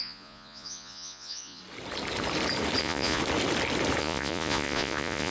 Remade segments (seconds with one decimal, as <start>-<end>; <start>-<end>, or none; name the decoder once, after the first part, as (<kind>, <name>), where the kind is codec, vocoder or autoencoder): 0.0-1.6 (vocoder, Vocos); 2.8-3.2; 4.0-5.3